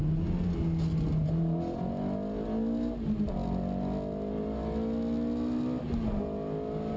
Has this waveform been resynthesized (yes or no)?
no